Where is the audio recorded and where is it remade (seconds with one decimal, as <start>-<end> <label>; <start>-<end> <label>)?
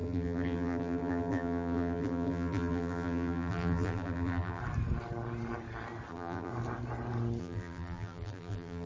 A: 0.0-4.6 remade; 4.6-6.1 recorded; 6.1-6.5 remade; 6.5-7.4 recorded; 7.4-8.9 remade